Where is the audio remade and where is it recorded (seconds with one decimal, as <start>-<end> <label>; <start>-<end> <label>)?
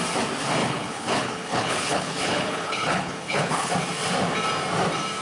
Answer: 0.0-0.6 recorded; 0.6-3.7 remade; 3.7-5.2 recorded